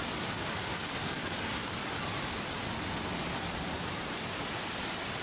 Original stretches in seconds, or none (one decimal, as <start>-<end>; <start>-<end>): 0.0-5.2